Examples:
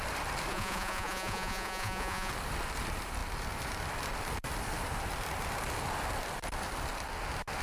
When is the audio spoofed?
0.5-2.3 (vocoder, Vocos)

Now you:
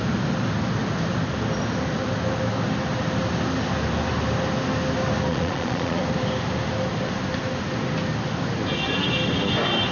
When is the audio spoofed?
5.3-6.0 (vocoder, Vocos)

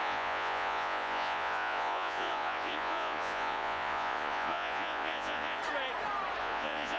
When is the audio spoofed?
0.0-5.6 (vocoder, Vocos); 6.4-7.0

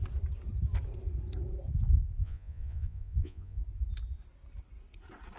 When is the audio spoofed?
2.2-3.6 (vocoder, Vocos)

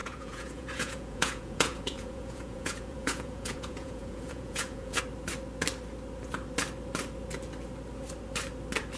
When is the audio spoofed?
0.0-5.0 (vocoder, Vocos)